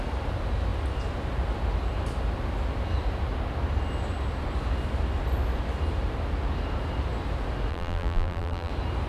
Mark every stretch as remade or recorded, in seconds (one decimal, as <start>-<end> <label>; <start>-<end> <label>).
0.0-7.7 recorded; 7.7-8.7 remade; 8.7-9.1 recorded